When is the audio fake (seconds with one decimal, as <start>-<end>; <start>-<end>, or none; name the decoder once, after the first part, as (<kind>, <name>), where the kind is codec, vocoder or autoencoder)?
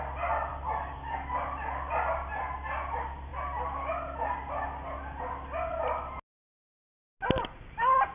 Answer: 0.5-2.4 (vocoder, BigVGAN v2)